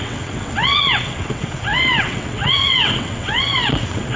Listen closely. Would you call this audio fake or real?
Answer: fake